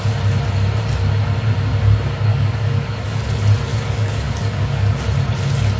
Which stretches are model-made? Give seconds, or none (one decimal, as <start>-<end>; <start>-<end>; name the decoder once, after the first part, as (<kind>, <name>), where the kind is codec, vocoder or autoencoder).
2.3-3.1 (codec, DAC); 3.7-5.0